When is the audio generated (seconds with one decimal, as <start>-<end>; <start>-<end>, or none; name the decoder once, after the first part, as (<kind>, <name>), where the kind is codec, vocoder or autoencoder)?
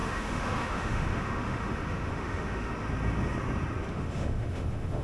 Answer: 0.0-2.7 (autoencoder, DAC-VAE); 3.9-5.0